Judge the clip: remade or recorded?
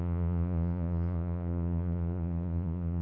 remade